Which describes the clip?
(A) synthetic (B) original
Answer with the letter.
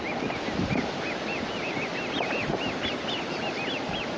B